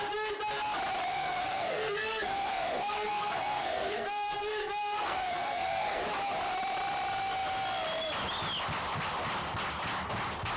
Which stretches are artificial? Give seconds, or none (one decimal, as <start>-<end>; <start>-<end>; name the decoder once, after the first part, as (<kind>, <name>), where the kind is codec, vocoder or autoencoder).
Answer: 1.1-6.0 (codec, SNAC)